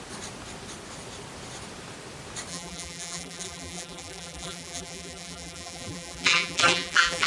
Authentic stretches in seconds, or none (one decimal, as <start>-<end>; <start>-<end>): 0.0-2.5